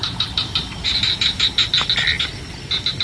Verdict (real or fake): real